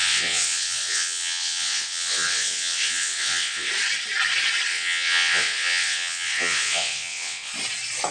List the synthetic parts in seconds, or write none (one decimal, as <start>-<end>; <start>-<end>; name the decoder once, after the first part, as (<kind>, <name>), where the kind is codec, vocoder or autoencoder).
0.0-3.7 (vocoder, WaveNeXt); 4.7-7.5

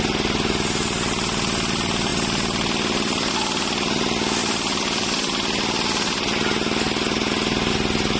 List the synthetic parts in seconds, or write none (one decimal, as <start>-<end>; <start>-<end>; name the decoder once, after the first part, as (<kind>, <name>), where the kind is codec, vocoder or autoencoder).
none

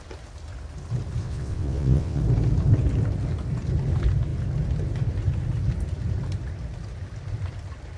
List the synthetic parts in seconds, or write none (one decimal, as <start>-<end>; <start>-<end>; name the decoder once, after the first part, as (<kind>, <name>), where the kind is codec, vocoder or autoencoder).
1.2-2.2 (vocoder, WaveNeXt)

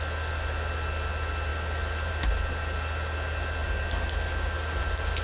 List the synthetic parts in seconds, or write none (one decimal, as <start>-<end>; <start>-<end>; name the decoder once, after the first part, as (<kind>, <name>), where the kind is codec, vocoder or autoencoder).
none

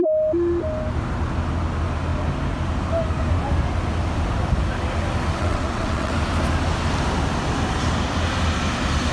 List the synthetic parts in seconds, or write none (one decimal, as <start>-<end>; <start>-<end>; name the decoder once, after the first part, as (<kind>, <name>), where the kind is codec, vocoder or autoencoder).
5.4-6.1 (vocoder, WaveNeXt)

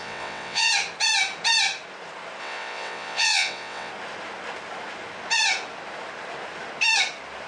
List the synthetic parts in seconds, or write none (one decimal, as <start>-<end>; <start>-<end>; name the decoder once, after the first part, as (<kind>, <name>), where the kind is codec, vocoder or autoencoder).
0.0-0.7 (vocoder, WaveNeXt); 2.4-3.9

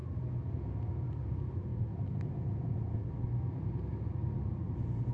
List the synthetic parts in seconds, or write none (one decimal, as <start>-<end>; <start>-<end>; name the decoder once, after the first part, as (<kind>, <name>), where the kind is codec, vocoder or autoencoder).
none